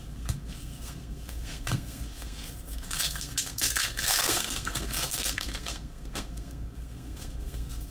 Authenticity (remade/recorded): remade